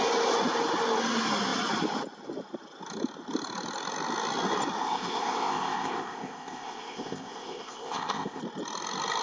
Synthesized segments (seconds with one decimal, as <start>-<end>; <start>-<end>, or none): 4.8-8.4